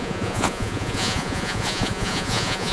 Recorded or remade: remade